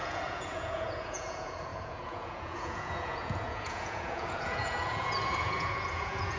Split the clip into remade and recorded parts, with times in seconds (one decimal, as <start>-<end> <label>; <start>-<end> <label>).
0.0-6.4 remade